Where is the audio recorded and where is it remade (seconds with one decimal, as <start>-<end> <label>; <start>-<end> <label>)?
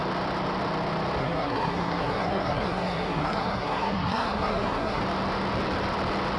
0.0-1.2 recorded; 1.2-5.0 remade; 5.0-6.4 recorded